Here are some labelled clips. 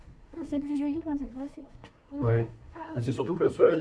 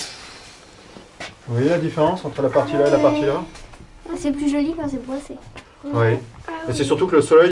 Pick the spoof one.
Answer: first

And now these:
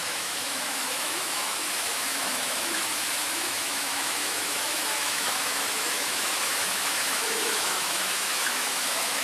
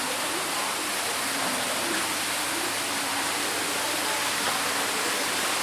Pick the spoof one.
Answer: first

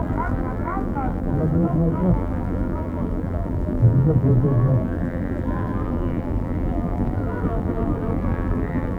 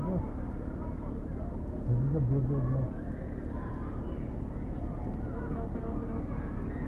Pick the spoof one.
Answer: first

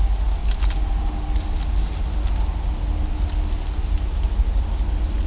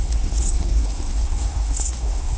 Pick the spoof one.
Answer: second